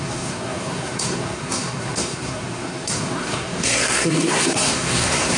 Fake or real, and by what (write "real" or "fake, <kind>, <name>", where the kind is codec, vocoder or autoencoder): fake, codec, SNAC